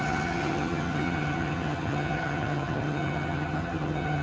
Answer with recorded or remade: remade